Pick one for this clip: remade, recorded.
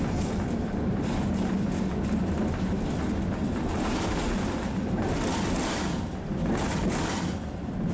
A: recorded